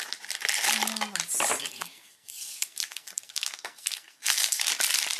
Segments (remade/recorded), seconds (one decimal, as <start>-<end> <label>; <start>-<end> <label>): 0.0-1.6 recorded; 1.6-4.7 remade; 4.7-5.2 recorded